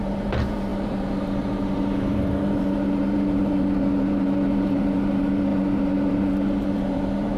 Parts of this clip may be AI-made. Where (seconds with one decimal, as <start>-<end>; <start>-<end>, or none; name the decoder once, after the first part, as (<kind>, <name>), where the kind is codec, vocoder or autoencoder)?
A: 0.0-7.4 (vocoder, BigVGAN v2)